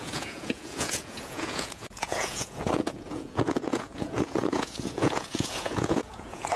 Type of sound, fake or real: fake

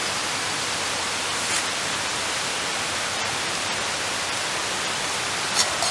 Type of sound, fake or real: real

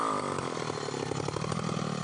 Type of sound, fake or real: real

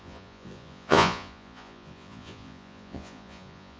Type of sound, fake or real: fake